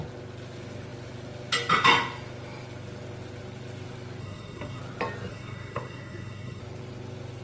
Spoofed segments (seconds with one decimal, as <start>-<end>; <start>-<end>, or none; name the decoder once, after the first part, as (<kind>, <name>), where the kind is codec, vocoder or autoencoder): 4.2-4.8 (codec, SNAC); 5.3-6.6